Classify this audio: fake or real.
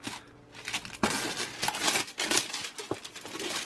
real